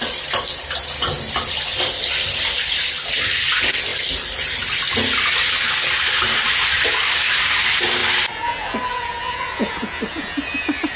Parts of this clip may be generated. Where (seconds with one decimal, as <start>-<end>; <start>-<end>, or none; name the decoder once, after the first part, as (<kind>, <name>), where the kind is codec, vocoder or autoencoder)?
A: none